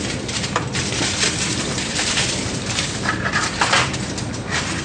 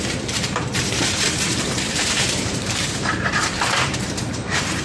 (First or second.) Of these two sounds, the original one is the first